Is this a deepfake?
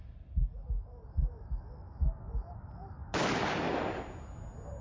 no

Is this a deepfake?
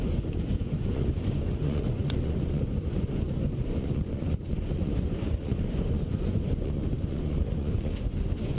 yes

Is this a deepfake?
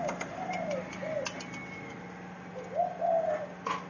no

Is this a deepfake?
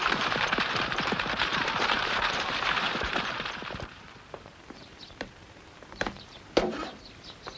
yes